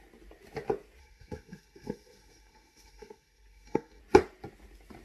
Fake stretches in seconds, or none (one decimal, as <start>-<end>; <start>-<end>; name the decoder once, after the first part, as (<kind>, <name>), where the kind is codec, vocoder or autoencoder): 1.0-4.0 (codec, SNAC)